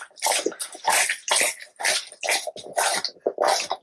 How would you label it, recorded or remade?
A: recorded